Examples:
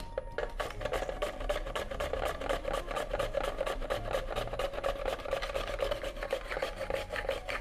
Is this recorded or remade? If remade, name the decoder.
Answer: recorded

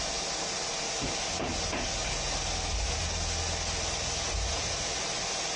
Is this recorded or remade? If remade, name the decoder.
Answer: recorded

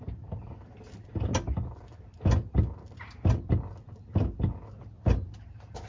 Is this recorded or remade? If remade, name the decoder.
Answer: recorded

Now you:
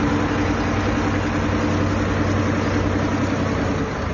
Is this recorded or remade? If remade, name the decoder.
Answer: recorded